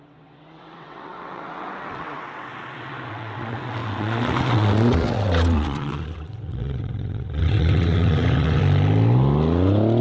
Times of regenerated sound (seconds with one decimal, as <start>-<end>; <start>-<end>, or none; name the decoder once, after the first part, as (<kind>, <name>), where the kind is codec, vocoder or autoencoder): 0.0-8.6 (vocoder, WaveNeXt)